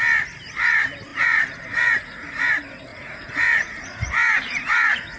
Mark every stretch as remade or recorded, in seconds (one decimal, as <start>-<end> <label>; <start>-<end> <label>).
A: 0.0-1.1 recorded; 1.1-2.5 remade; 2.5-2.9 recorded; 2.9-5.2 remade